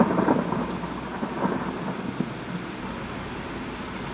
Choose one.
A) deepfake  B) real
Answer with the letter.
B